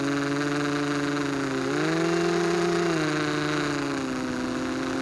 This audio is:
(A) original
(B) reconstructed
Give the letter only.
A